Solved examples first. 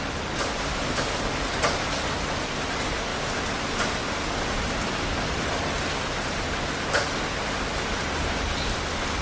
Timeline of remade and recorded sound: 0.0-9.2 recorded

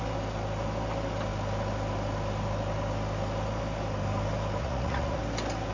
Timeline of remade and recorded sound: 0.0-4.6 recorded; 4.6-5.2 remade; 5.2-5.7 recorded

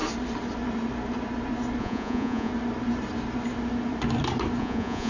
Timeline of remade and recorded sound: 0.0-1.8 recorded; 1.8-2.5 remade; 2.5-4.6 recorded; 4.6-5.1 remade

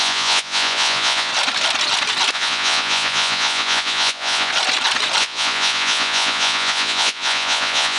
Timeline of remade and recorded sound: 0.0-1.3 remade; 1.3-2.3 recorded; 2.3-4.5 remade; 4.5-5.2 recorded; 5.2-8.0 remade

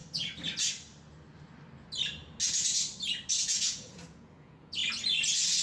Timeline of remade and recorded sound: 0.0-3.4 recorded; 3.4-4.8 remade; 4.8-5.6 recorded

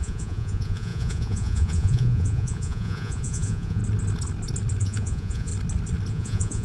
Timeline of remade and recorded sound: 0.0-3.8 remade; 3.8-4.8 recorded; 4.8-5.5 remade; 5.5-6.1 recorded; 6.1-6.6 remade

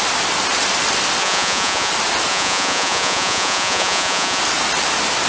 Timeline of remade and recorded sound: 0.0-1.2 recorded; 1.2-1.9 remade; 1.9-2.3 recorded; 2.3-4.4 remade; 4.4-5.3 recorded